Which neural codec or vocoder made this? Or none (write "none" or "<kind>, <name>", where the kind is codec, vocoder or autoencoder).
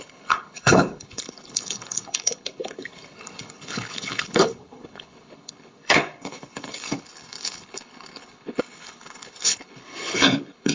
codec, HILCodec